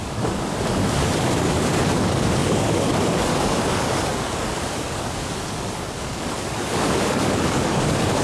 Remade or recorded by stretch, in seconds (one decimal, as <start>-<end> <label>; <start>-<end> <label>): 0.0-8.2 remade